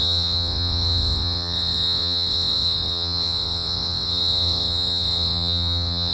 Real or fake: fake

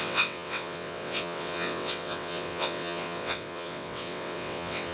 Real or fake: fake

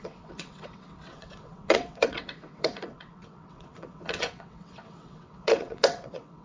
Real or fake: fake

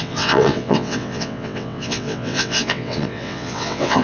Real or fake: fake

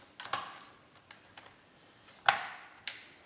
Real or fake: real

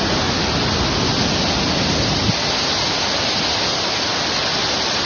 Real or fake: real